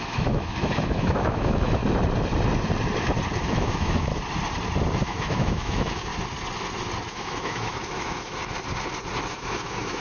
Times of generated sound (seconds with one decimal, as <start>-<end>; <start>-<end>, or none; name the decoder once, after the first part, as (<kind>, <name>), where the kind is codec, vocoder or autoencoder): 0.0-1.8 (autoencoder, DAC-VAE); 3.4-4.1; 5.0-6.1; 7.1-8.4; 9.3-10.0

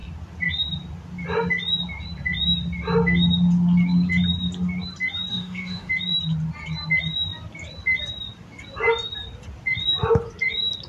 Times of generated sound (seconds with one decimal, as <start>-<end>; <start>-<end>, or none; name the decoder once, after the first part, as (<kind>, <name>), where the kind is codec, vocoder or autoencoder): 5.3-5.9 (autoencoder, DAC-VAE)

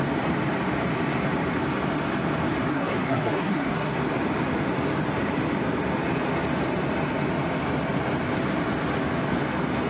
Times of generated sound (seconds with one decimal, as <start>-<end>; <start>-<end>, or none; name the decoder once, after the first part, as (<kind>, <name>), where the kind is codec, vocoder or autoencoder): 2.7-4.0 (codec, SNAC)